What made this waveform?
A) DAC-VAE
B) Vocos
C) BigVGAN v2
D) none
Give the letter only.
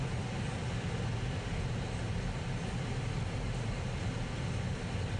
D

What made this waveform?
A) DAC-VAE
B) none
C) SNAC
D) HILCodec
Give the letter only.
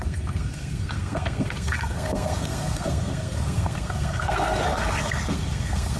C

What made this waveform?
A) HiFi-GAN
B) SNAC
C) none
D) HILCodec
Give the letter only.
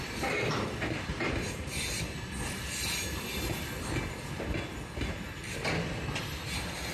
C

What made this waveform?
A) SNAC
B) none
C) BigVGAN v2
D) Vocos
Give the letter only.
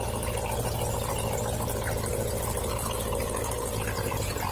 B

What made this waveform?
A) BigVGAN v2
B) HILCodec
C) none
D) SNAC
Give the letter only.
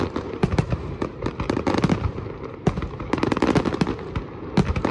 C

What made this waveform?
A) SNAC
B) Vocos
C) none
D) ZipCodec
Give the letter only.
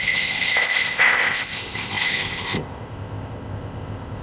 D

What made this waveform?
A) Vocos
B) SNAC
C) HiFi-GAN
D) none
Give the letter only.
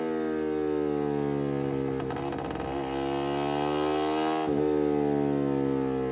D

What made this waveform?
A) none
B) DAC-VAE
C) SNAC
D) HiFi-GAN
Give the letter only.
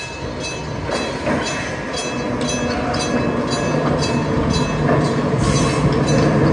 A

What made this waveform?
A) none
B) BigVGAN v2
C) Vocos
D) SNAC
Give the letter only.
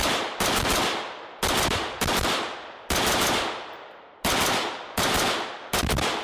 A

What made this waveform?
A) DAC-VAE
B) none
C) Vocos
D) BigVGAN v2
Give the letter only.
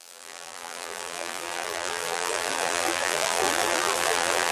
D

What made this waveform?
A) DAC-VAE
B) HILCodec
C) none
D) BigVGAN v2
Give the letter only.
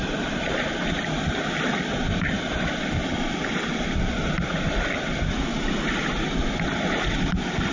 C